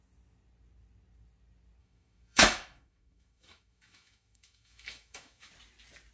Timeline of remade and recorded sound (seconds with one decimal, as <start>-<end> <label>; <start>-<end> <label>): 0.0-1.8 recorded; 1.8-5.5 remade; 5.5-6.1 recorded